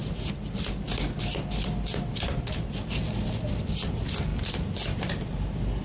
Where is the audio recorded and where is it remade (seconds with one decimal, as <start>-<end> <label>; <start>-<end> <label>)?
0.0-5.8 recorded